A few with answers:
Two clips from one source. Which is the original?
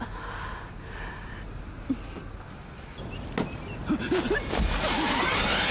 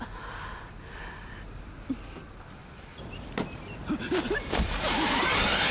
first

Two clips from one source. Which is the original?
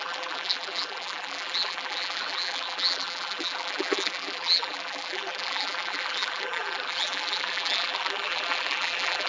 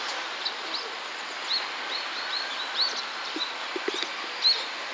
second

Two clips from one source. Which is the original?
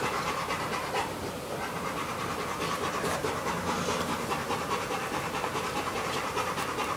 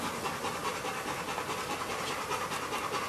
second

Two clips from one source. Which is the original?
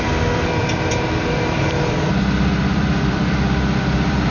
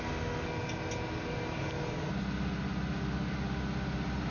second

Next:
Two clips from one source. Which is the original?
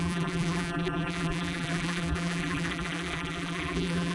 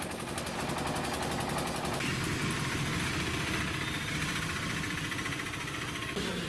second